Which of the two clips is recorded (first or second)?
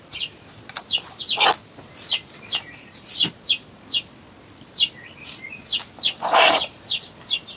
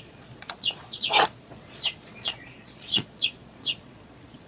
first